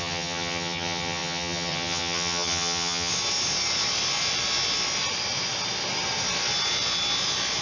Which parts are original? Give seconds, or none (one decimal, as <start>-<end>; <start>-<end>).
3.1-7.6